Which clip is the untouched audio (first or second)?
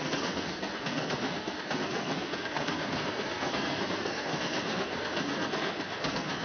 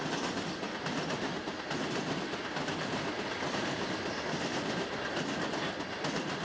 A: second